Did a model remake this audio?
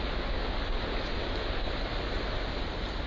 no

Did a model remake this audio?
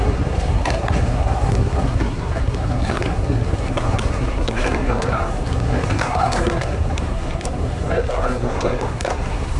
yes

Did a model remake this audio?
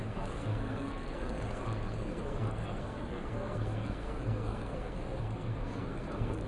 yes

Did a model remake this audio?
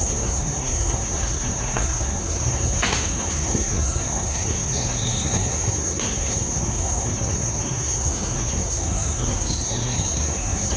yes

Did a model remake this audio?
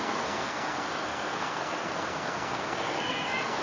yes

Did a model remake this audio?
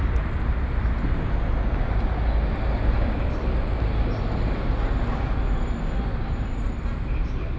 no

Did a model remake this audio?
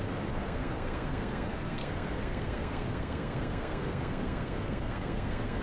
yes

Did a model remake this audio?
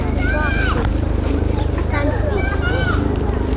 no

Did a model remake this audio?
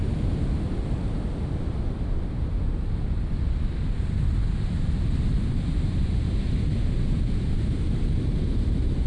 no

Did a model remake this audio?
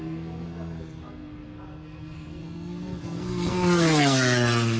yes